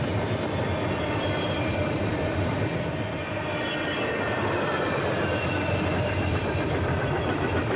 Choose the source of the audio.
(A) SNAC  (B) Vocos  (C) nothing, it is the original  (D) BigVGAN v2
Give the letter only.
D